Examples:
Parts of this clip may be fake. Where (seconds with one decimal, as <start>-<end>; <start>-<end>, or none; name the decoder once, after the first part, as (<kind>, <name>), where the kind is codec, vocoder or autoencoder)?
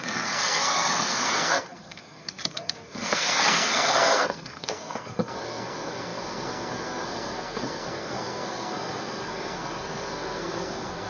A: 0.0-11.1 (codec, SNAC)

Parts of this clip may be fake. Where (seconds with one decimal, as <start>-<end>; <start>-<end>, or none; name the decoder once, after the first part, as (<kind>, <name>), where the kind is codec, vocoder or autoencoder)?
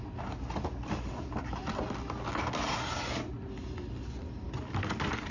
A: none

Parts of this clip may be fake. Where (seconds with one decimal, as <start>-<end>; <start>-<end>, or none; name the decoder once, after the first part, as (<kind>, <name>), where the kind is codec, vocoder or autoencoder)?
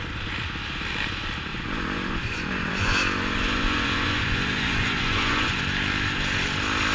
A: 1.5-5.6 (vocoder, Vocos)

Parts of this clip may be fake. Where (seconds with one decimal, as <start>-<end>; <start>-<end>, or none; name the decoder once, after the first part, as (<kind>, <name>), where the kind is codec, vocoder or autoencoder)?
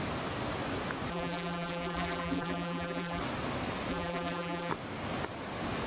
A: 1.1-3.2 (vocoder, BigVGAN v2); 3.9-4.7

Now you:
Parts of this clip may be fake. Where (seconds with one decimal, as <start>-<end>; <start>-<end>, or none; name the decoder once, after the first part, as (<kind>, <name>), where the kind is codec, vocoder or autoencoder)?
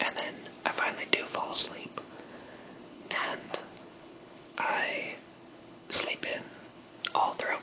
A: 1.3-4.6 (codec, HILCodec); 5.2-7.0